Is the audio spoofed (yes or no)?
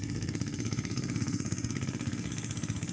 yes